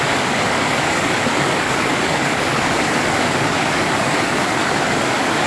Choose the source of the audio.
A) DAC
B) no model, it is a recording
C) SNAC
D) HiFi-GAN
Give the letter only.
A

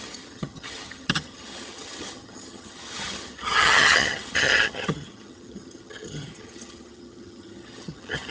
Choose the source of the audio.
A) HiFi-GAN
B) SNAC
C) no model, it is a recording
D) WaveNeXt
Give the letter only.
A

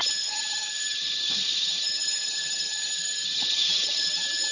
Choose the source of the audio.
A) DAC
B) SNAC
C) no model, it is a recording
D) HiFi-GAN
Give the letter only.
D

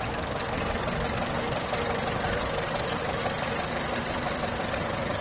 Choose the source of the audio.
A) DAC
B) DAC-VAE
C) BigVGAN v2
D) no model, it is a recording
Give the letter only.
C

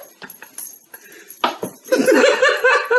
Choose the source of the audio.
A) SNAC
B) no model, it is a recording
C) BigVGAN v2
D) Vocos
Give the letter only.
B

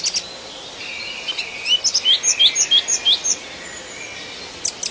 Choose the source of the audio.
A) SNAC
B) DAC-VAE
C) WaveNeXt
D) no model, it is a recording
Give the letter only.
D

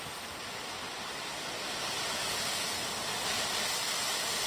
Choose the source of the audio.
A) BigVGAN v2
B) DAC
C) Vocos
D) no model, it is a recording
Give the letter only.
D